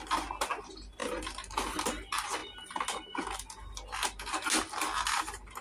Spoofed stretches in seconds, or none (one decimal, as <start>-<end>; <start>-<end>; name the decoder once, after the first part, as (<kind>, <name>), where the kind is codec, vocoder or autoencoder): none